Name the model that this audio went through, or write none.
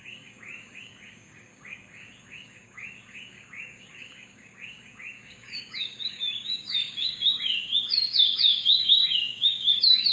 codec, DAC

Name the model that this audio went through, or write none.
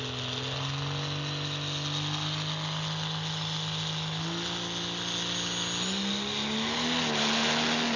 none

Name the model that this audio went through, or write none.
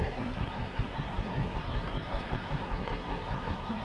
codec, SNAC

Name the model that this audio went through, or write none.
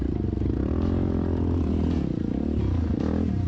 none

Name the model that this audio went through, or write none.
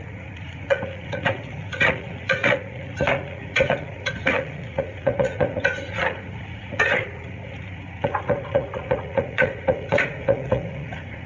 vocoder, Vocos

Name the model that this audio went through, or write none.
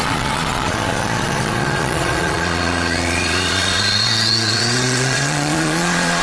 vocoder, Vocos